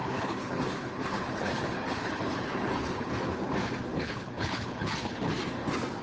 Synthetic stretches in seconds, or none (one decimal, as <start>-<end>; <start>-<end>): 0.0-3.1; 3.9-5.3